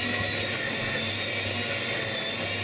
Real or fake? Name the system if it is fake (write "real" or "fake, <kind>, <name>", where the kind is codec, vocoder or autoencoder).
real